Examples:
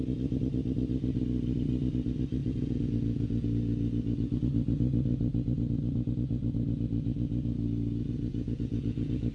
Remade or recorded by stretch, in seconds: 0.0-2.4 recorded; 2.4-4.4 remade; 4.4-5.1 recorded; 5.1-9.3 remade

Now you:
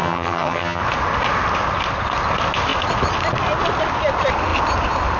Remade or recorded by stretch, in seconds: 0.0-0.8 remade; 0.8-5.2 recorded

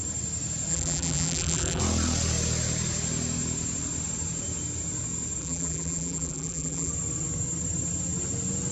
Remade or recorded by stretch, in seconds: 0.0-0.7 recorded; 0.7-1.8 remade; 1.8-5.4 recorded; 5.4-6.9 remade; 6.9-8.7 recorded

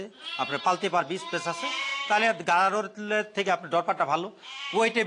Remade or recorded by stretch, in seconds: 0.0-0.5 recorded; 0.5-1.0 remade; 1.0-5.1 recorded

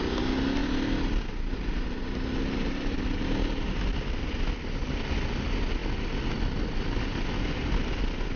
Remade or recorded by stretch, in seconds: 0.0-8.4 recorded

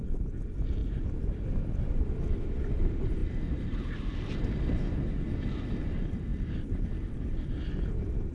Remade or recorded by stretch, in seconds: 0.0-0.8 recorded; 0.8-1.5 remade; 1.5-6.3 recorded; 6.3-6.9 remade; 6.9-8.3 recorded

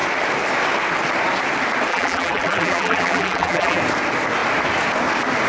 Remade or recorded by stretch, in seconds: 0.0-1.9 recorded; 1.9-3.8 remade; 3.8-5.5 recorded

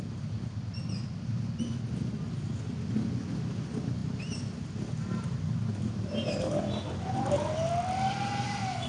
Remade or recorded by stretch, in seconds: 0.0-8.9 recorded